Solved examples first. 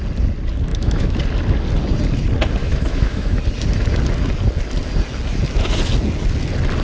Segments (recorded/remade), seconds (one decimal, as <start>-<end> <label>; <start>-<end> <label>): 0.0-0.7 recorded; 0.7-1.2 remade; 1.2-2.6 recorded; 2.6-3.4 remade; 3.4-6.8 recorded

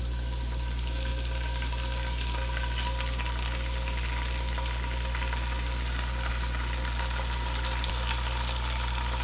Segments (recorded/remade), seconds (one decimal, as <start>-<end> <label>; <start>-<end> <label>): 0.0-9.2 recorded

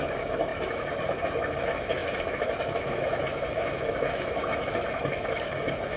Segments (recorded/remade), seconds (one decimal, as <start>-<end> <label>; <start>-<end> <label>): 0.0-6.0 remade

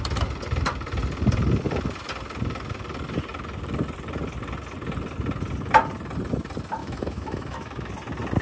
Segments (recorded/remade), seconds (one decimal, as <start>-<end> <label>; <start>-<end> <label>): 0.0-6.8 recorded; 6.8-7.9 remade; 7.9-8.4 recorded

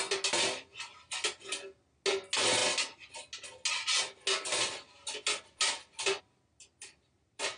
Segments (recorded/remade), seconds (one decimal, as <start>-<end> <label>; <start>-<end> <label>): 0.0-7.6 recorded